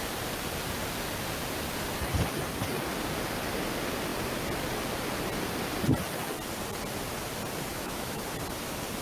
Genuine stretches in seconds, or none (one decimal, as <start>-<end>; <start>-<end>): 0.0-7.7; 8.2-9.0